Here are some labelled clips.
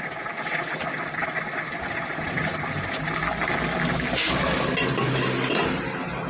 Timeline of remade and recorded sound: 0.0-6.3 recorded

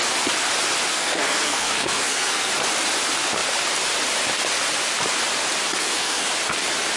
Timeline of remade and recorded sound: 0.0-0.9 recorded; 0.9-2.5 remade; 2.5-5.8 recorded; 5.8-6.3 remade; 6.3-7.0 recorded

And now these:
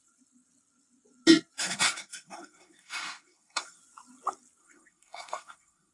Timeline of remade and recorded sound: 0.0-1.6 recorded; 1.6-3.8 remade; 3.8-4.6 recorded; 4.6-5.9 remade

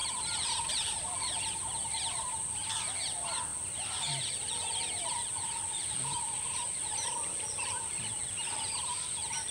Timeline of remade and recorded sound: 0.0-1.3 remade; 1.3-9.5 recorded

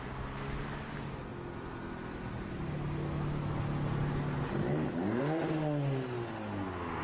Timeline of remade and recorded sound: 0.0-7.0 recorded

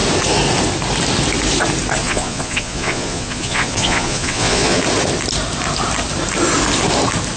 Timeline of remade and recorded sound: 0.0-2.0 recorded; 2.0-4.8 remade; 4.8-7.4 recorded

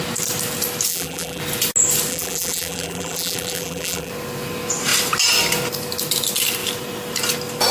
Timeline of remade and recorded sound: 0.0-0.9 recorded; 0.9-1.4 remade; 1.4-2.1 recorded; 2.1-4.1 remade; 4.1-7.7 recorded

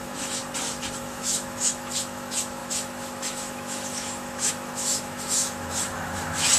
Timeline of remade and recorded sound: 0.0-0.4 remade; 0.4-1.0 recorded; 1.0-6.6 remade